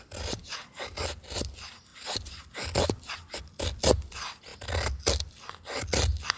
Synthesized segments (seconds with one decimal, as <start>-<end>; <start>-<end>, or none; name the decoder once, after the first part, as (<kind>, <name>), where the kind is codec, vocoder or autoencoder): none